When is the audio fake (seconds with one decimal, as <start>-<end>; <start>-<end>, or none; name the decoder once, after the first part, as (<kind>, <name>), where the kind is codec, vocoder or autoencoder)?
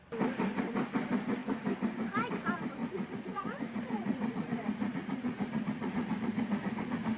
2.8-7.2 (vocoder, Vocos)